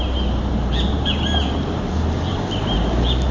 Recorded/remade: recorded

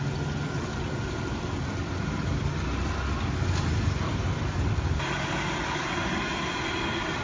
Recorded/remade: recorded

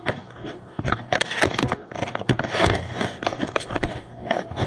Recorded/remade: remade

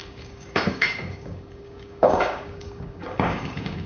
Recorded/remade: remade